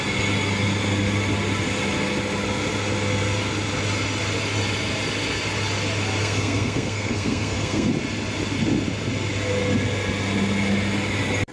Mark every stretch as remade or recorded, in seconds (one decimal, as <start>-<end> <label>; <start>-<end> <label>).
0.0-6.2 recorded; 6.2-7.9 remade; 7.9-11.5 recorded